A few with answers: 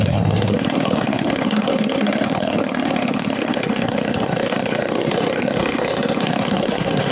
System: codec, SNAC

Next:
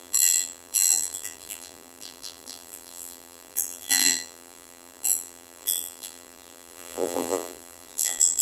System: vocoder, BigVGAN v2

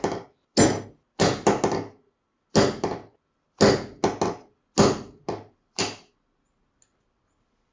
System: none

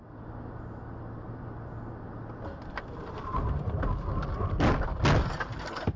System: none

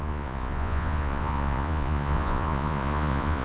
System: vocoder, Vocos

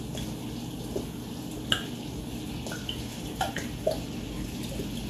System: none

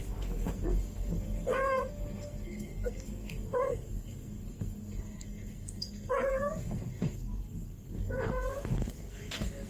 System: codec, SNAC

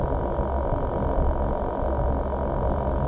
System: none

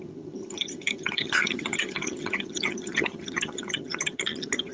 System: vocoder, HiFi-GAN